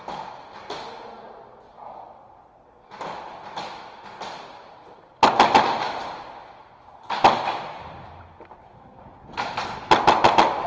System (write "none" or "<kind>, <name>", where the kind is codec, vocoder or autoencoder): none